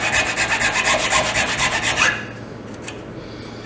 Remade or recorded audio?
recorded